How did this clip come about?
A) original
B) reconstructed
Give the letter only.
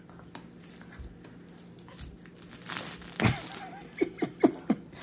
A